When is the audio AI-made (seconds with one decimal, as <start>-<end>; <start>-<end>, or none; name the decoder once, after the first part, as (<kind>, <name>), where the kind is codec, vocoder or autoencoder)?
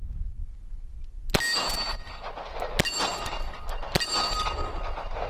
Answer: none